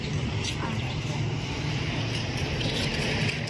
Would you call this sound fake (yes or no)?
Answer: no